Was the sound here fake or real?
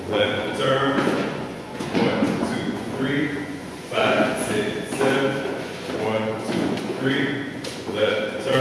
fake